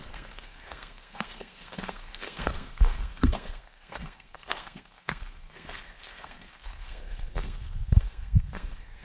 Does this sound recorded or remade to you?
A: remade